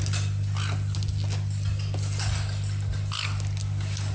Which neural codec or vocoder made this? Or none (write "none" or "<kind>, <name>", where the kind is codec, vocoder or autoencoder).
none